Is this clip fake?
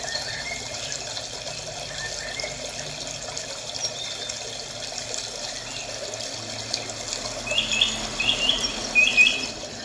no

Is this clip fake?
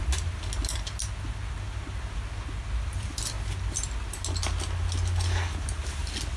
no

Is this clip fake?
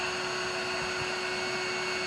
no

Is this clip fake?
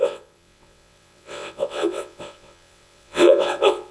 yes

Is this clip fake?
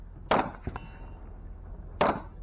no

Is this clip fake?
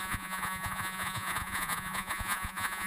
yes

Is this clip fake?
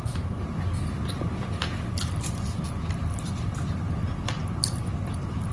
no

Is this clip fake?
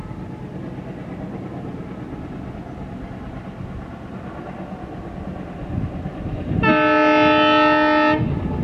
no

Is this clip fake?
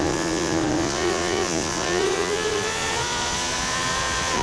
yes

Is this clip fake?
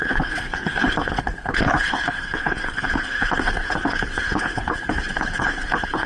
yes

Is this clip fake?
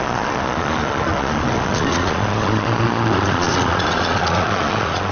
yes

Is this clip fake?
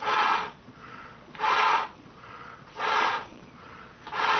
yes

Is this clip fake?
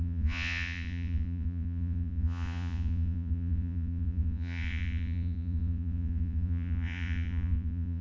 yes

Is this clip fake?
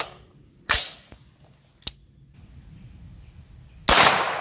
no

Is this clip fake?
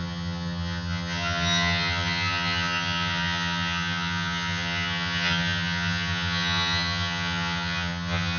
yes